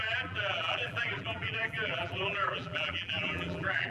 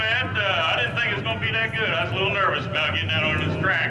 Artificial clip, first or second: first